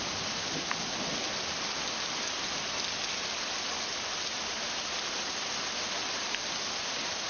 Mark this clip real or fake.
real